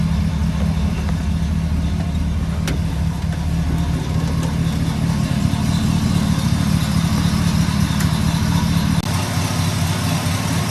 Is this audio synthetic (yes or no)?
no